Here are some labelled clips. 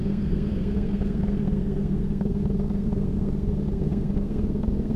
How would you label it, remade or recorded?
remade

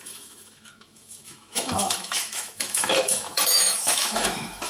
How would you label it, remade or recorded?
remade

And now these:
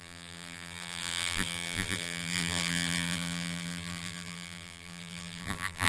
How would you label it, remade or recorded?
remade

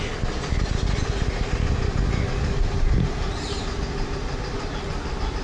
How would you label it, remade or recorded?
recorded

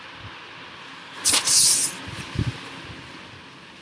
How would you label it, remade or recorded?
recorded